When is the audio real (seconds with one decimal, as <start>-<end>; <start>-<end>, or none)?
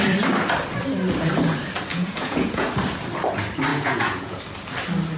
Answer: 0.0-1.9; 2.7-3.7; 4.4-5.2